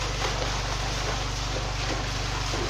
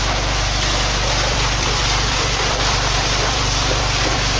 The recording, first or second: first